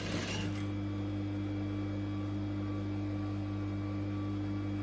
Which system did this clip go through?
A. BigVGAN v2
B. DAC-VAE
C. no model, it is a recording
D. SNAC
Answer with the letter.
C